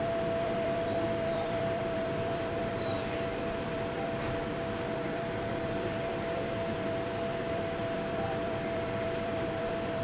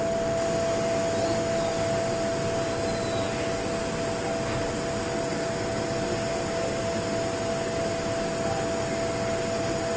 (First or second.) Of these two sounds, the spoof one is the first